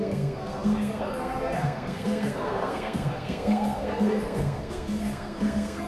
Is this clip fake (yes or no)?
yes